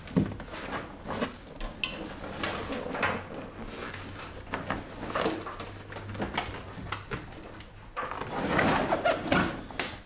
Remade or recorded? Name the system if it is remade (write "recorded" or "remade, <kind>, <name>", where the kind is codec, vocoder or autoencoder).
recorded